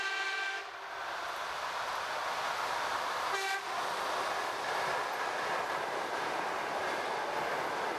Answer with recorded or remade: recorded